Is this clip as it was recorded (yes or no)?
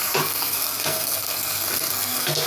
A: no